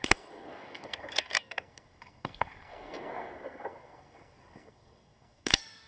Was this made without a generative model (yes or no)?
no